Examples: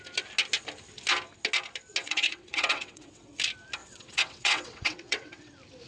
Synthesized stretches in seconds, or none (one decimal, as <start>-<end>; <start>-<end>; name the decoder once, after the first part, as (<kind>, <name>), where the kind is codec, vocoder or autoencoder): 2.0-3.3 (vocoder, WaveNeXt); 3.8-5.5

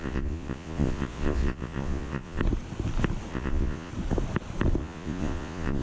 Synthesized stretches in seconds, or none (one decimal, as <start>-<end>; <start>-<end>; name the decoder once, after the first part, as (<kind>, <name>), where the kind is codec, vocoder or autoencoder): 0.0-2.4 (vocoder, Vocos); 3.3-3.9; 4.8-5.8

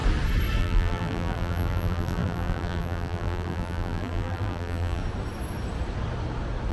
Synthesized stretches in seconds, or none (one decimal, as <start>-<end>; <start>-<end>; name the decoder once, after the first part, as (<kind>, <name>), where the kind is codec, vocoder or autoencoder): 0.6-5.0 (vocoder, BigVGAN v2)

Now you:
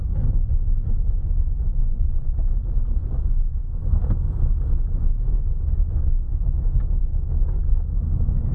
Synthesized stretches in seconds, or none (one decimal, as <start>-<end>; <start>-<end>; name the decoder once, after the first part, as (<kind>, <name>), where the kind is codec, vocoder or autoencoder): 1.8-2.3 (vocoder, Vocos)

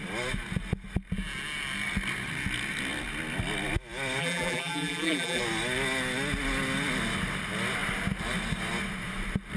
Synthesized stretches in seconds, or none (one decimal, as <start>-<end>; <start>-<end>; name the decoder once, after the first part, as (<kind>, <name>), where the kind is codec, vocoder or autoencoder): 4.2-5.4 (vocoder, BigVGAN v2)

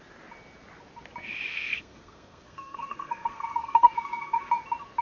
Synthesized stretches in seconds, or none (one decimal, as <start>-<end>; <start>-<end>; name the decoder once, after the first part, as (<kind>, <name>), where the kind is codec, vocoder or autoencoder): 1.5-4.5 (codec, SNAC)

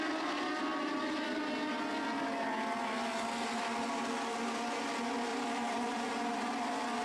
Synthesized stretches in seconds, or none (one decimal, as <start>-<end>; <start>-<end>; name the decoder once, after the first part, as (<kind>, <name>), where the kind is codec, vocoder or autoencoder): 5.3-6.1 (vocoder, BigVGAN v2)